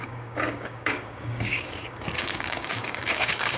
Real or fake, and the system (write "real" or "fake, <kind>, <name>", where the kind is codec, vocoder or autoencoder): fake, codec, DAC